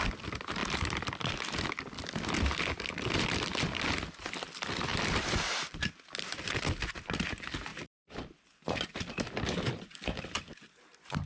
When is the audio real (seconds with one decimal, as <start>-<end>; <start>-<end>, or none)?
0.0-0.6; 4.3-4.9; 5.9-7.7